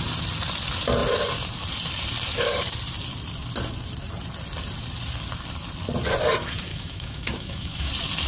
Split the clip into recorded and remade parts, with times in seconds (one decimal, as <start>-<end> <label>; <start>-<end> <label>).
0.0-6.7 recorded; 6.7-7.9 remade; 7.9-8.3 recorded